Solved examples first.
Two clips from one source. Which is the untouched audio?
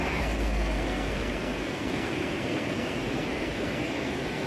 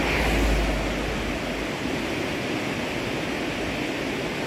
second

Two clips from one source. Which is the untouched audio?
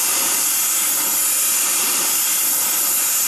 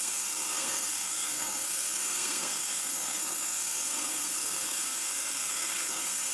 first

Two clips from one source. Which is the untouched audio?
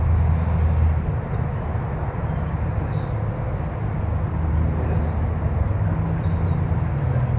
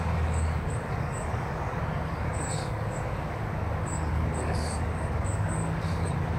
first